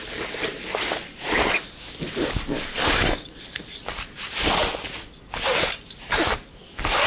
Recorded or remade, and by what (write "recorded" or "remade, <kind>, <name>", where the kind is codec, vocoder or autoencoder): recorded